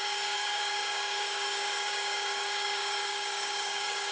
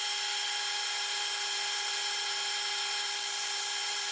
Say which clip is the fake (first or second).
first